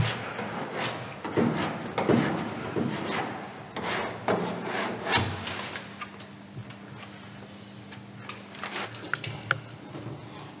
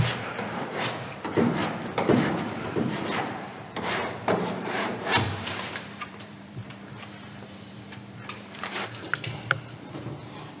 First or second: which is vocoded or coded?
second